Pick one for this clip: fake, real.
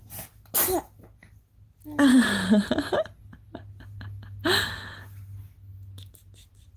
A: real